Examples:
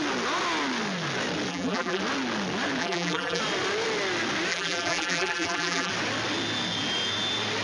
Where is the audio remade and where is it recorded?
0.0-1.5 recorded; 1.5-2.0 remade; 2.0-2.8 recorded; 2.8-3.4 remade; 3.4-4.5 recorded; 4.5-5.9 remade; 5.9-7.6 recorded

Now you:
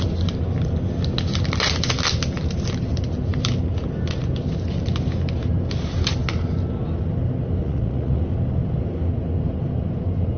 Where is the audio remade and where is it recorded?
0.0-7.6 recorded; 7.6-8.2 remade; 8.2-10.4 recorded